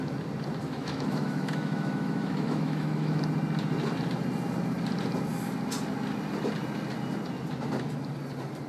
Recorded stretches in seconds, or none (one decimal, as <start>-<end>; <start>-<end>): 0.0-0.6; 3.2-8.7

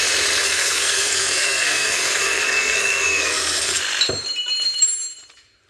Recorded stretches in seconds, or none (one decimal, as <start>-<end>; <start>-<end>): 0.0-0.4; 3.8-5.7

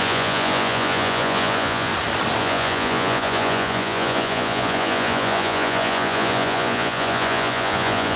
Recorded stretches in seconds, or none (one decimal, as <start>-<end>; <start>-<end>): 1.9-2.4

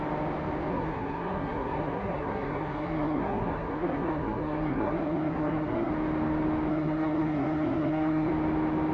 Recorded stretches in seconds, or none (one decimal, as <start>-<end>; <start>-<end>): 0.0-0.7; 5.9-6.7; 8.3-8.9

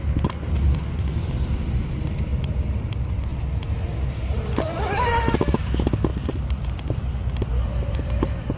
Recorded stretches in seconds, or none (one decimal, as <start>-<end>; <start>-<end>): 0.0-2.3; 2.9-6.1; 6.7-8.6

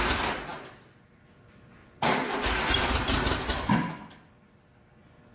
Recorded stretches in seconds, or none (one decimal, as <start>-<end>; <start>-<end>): 0.0-5.3

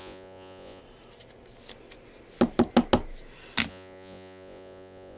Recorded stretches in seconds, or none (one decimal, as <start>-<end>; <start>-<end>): 0.8-3.7

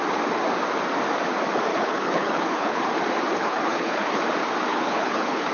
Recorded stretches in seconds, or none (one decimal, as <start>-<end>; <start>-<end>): 0.0-1.7; 2.9-3.3; 4.2-4.7